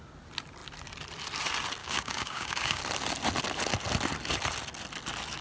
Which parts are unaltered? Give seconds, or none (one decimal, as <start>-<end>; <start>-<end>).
0.0-1.8; 2.8-5.4